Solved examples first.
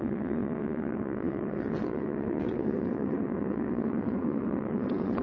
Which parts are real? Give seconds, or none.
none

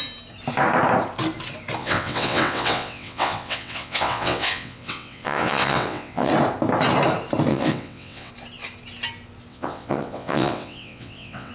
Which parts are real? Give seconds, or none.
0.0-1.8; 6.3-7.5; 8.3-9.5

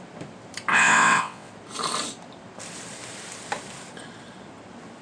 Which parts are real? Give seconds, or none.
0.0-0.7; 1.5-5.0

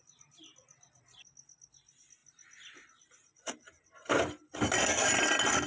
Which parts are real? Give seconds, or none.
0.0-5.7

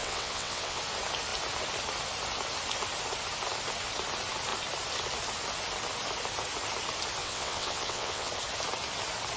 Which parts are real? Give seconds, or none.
0.8-7.2; 8.3-9.4

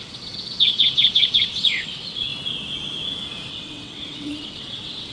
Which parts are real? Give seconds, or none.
2.3-3.5